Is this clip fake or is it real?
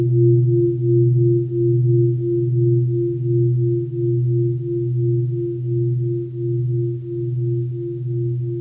real